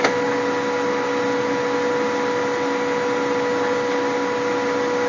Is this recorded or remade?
recorded